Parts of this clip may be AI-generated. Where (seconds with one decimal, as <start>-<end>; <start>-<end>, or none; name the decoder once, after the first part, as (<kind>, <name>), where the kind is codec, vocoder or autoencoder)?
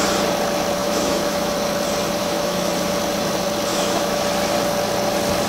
0.8-1.5 (autoencoder, DAC-VAE); 2.2-2.7; 3.7-4.2